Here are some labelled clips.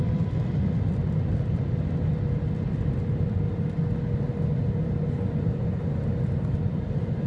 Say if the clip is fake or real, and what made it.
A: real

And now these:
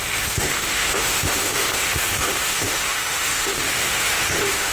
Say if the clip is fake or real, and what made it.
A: fake, autoencoder, DAC-VAE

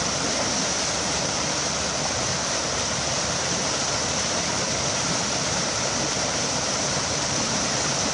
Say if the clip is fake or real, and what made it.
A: fake, vocoder, BigVGAN v2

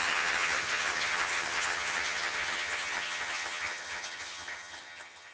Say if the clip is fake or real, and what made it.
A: fake, vocoder, HiFi-GAN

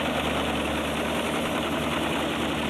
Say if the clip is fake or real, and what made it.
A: real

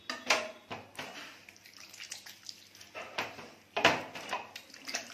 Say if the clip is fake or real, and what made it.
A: real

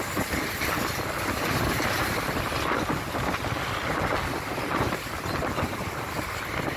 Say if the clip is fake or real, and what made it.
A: real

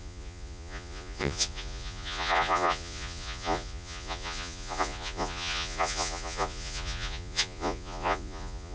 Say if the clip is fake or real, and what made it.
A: fake, vocoder, Vocos